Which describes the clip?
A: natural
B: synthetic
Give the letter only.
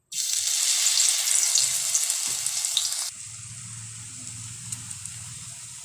A